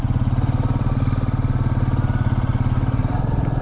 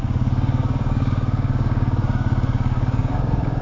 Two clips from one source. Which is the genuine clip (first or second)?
first